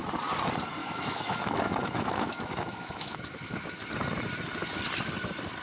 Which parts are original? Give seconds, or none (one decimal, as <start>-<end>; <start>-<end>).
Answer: 0.0-0.8; 3.8-5.6